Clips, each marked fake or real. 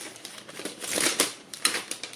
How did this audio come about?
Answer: fake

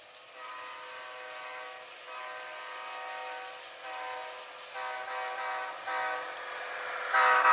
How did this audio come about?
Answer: real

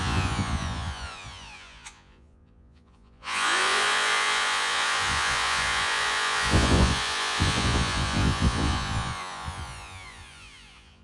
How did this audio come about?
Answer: fake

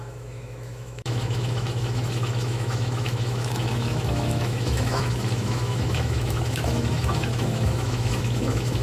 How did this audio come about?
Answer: fake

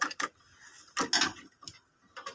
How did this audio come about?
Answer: real